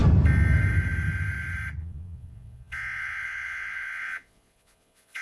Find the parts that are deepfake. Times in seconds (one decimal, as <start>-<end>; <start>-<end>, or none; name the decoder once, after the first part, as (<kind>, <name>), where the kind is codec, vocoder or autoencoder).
1.8-5.2 (vocoder, Vocos)